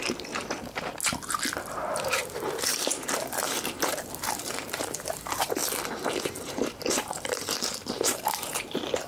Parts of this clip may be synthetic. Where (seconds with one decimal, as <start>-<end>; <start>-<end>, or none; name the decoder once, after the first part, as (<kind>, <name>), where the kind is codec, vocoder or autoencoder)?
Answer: 0.0-0.9 (vocoder, BigVGAN v2); 1.7-5.6; 6.3-9.1